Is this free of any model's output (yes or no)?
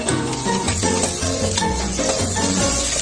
no